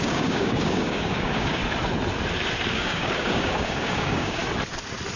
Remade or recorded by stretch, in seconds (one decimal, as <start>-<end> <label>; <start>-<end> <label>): 0.0-1.6 remade; 1.6-2.7 recorded; 2.7-4.4 remade; 4.4-5.2 recorded